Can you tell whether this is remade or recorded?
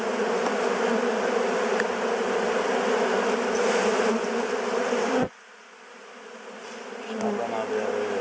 recorded